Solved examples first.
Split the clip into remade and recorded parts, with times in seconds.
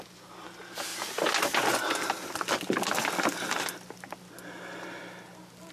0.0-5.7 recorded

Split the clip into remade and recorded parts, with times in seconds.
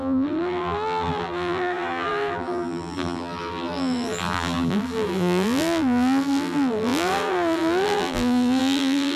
0.0-9.2 remade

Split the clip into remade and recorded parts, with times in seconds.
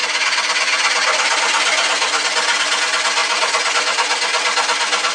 0.0-3.2 recorded; 3.2-3.7 remade; 3.7-5.1 recorded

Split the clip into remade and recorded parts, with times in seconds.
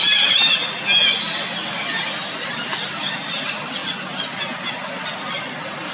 0.0-0.4 remade; 0.4-2.5 recorded; 2.5-3.8 remade; 3.8-5.9 recorded